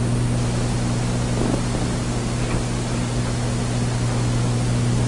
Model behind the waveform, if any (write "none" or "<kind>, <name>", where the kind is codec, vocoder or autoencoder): none